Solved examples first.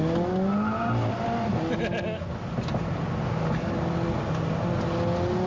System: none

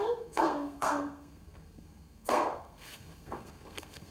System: codec, SNAC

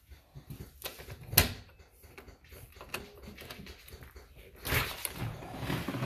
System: none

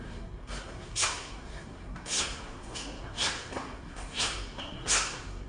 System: codec, SNAC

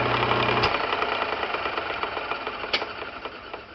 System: none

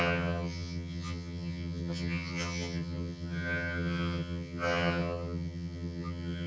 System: vocoder, HiFi-GAN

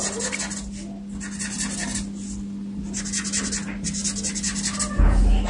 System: none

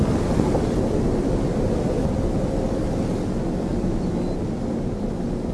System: none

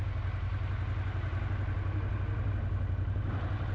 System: none